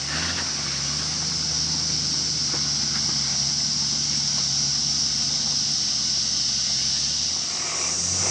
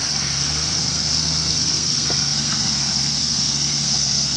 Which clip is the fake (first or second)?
second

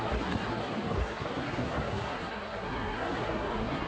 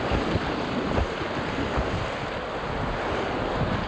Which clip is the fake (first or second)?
first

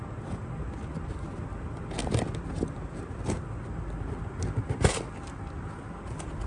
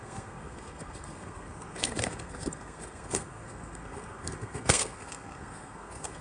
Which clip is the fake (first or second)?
second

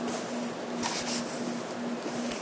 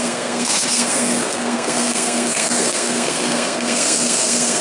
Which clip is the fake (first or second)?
second